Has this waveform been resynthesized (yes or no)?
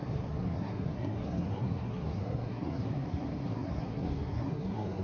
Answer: yes